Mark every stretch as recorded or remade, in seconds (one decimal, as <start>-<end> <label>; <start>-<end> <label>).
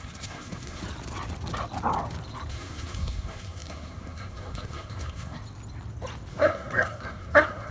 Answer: 0.0-0.8 remade; 0.8-2.5 recorded; 2.5-5.4 remade; 5.4-6.3 recorded; 6.3-7.7 remade